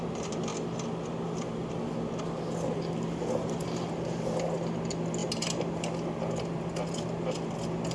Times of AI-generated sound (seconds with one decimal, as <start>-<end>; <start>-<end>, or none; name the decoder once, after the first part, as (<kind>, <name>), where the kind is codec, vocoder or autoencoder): none